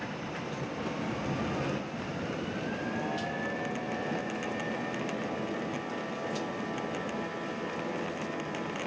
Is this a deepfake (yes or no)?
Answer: no